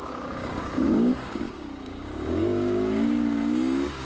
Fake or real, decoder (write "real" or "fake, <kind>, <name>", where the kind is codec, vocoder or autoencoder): fake, codec, DAC